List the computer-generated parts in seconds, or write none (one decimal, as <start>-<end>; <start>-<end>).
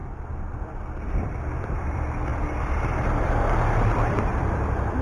1.6-5.0